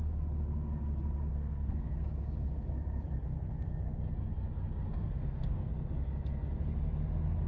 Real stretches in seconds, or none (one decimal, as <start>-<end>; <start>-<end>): 0.0-1.3; 2.3-4.9; 5.7-7.5